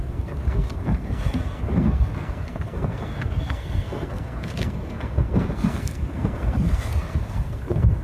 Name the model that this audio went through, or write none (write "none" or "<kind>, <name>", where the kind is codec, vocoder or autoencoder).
codec, SNAC